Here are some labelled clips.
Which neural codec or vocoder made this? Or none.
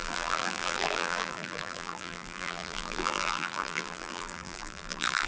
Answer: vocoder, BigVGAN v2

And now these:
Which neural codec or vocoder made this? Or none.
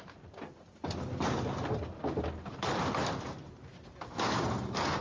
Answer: none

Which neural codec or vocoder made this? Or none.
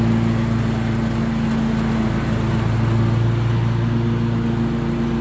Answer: none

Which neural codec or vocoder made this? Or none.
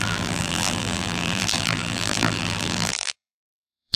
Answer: vocoder, BigVGAN v2